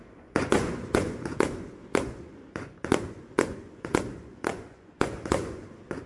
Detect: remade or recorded remade